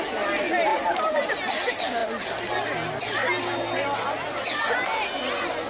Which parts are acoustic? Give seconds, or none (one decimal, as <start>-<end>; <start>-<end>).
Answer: 0.0-0.7; 1.3-5.7